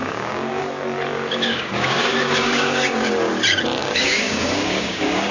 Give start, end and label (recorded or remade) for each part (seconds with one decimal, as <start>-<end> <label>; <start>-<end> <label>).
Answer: 0.0-0.6 remade; 0.6-1.1 recorded; 1.1-3.3 remade; 3.3-3.8 recorded; 3.8-5.3 remade